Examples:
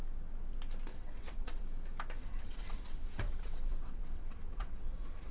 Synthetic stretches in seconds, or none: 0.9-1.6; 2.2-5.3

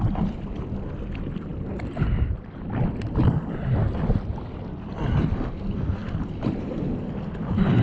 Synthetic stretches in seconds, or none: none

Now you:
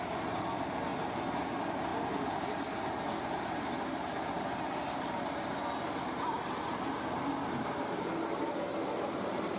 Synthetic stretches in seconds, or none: none

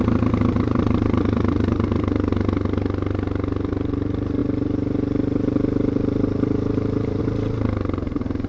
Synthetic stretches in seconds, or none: 0.0-2.3; 3.7-8.5

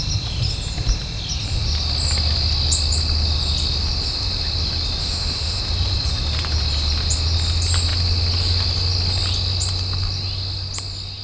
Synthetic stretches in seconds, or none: 5.0-5.6